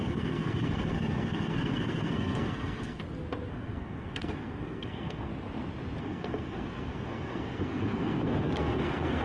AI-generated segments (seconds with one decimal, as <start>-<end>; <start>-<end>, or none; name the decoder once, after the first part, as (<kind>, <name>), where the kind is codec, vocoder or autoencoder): 0.0-3.0 (codec, SNAC); 3.5-5.3; 6.0-9.2